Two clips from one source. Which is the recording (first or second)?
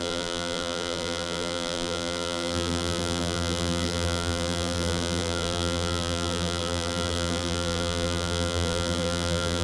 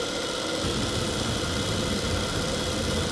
second